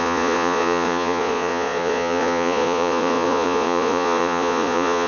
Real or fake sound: fake